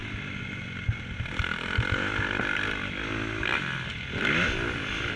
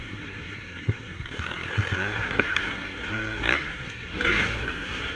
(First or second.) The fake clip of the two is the second